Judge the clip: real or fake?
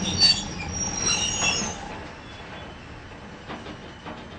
real